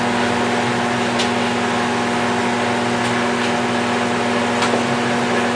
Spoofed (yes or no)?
no